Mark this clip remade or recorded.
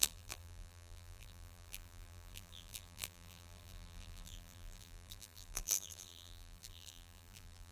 remade